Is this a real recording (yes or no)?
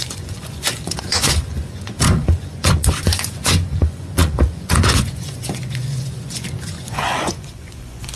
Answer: no